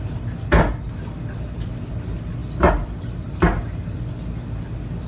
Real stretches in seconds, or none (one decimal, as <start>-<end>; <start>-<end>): 0.0-5.1